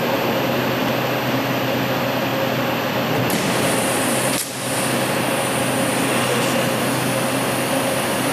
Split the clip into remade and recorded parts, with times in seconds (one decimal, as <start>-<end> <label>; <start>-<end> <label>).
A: 0.0-8.3 recorded